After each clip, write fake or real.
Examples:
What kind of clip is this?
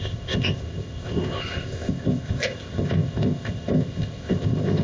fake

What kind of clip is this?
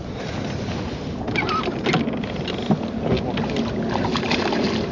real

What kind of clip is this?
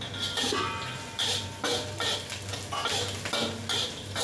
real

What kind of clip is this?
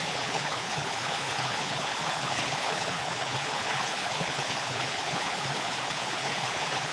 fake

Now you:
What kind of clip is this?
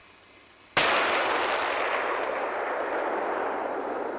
real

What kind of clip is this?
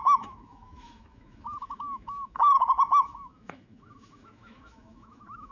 fake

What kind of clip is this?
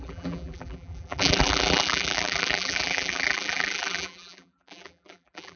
fake